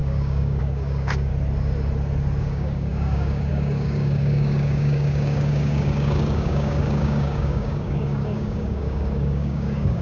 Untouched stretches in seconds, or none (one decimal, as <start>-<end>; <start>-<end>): 1.3-2.4